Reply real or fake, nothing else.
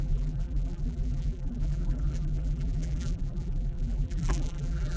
fake